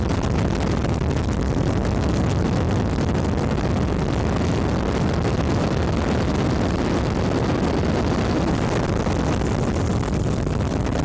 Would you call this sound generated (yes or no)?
no